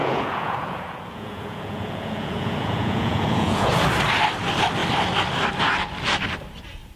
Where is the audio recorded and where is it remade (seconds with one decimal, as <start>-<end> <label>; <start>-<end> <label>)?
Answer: 0.0-3.7 remade; 3.7-7.0 recorded